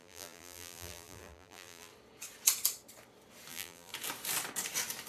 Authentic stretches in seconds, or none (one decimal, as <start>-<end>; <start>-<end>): 1.9-3.5; 3.9-5.1